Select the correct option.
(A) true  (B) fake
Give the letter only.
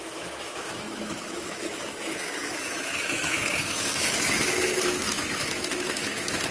B